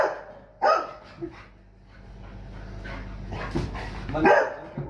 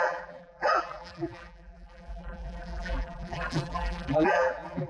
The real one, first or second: first